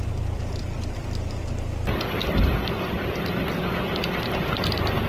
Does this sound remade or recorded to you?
remade